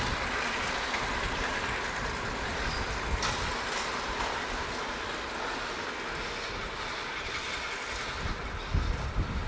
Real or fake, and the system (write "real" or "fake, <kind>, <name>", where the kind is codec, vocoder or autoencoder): real